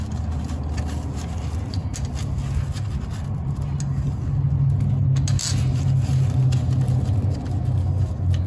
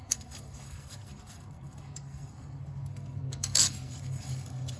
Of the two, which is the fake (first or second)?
second